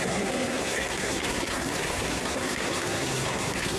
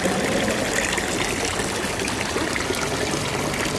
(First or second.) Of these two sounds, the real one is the second